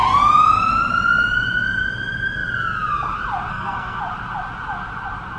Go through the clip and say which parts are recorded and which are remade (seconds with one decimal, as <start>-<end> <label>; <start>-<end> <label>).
0.0-3.5 recorded; 3.5-4.0 remade; 4.0-5.4 recorded